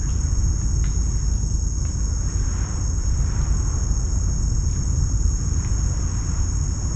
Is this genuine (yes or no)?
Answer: yes